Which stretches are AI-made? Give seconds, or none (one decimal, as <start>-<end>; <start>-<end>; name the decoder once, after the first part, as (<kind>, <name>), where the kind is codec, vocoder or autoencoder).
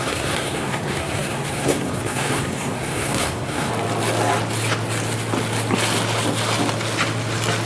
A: 0.0-3.7 (codec, SNAC)